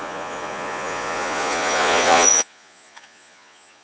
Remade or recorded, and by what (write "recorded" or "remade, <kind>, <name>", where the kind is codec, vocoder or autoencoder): remade, vocoder, Vocos